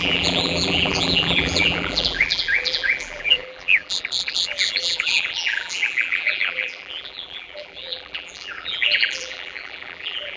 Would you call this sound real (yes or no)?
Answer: no